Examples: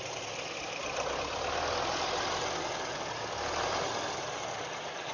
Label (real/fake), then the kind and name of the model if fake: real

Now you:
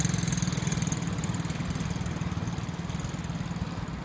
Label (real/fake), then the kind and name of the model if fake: real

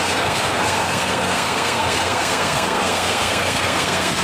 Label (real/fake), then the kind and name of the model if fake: fake, codec, SNAC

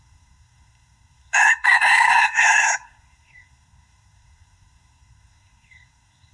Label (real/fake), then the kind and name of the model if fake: fake, codec, SNAC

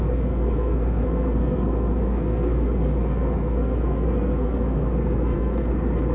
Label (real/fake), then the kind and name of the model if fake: fake, codec, SNAC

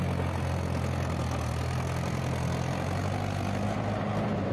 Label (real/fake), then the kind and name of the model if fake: real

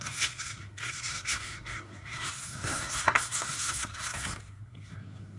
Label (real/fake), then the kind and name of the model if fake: fake, codec, SNAC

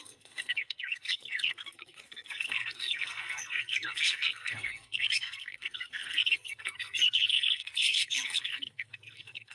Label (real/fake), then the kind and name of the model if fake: fake, codec, SNAC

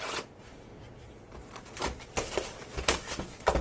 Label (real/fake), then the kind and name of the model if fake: real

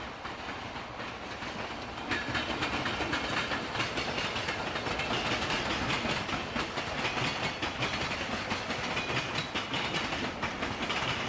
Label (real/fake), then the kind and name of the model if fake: real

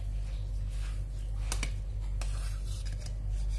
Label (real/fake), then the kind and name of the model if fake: real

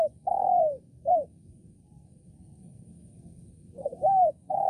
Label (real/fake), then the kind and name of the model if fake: fake, codec, SNAC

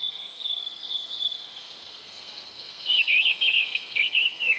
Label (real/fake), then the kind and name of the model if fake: fake, codec, SNAC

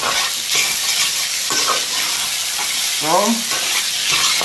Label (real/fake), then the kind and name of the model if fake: real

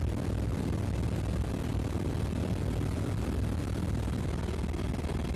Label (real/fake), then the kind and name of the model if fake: real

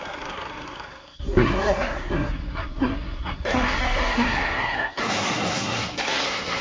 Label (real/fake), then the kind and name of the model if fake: fake, codec, SNAC